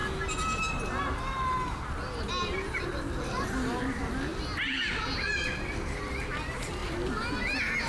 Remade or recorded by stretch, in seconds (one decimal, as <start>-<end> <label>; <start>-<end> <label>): 0.0-7.9 recorded